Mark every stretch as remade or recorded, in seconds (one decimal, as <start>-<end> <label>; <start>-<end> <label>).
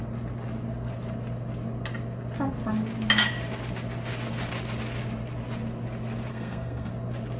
0.0-6.3 recorded; 6.3-6.9 remade; 6.9-7.4 recorded